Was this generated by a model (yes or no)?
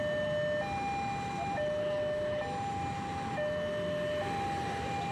no